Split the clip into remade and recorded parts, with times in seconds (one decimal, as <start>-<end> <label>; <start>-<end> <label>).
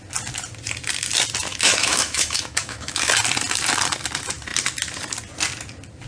0.0-1.5 recorded; 1.5-3.1 remade; 3.1-6.1 recorded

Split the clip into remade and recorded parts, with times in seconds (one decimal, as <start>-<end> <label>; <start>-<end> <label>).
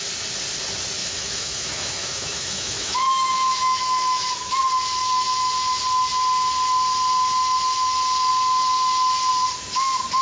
0.0-1.0 recorded; 1.0-4.6 remade; 4.6-5.0 recorded; 5.0-5.5 remade; 5.5-10.2 recorded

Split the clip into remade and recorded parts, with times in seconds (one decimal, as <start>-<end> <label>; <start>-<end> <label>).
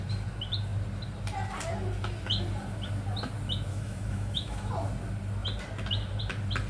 0.0-3.7 recorded; 3.7-4.7 remade; 4.7-6.7 recorded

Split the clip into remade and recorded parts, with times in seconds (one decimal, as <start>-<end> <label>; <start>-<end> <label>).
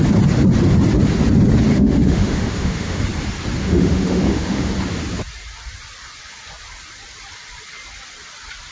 0.0-1.7 recorded; 1.7-3.0 remade; 3.0-3.6 recorded; 3.6-4.7 remade; 4.7-8.7 recorded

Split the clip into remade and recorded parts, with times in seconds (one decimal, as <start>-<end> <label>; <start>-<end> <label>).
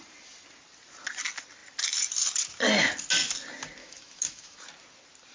0.0-3.8 recorded; 3.8-4.6 remade; 4.6-5.3 recorded